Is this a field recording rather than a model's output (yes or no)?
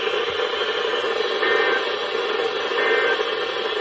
yes